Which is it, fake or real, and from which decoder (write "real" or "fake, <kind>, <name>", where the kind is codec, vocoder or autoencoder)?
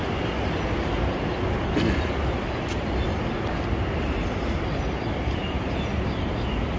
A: real